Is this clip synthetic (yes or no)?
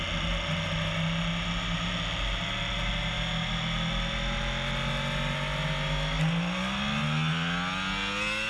no